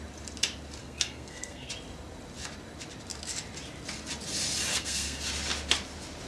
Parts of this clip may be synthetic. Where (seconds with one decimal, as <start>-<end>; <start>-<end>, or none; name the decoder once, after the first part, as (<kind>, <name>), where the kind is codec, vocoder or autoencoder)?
0.8-1.7 (codec, SNAC); 4.7-5.2